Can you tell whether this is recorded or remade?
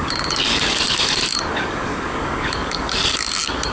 remade